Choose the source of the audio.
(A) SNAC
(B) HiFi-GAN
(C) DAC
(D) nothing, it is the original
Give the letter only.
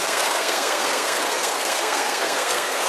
A